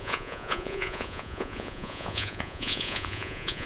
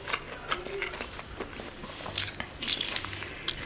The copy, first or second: first